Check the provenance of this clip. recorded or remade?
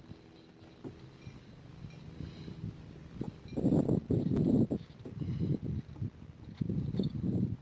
recorded